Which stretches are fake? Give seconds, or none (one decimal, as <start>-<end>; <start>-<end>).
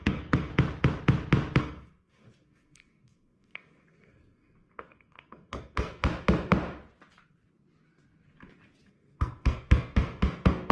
0.0-0.5; 1.6-6.0; 8.9-10.7